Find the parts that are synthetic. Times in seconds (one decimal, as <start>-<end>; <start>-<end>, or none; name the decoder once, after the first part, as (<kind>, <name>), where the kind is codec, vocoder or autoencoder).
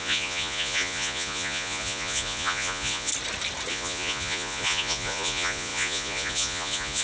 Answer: 0.0-3.1 (vocoder, Vocos); 3.7-7.0